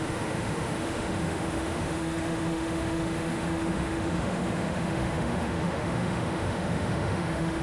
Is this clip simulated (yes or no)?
yes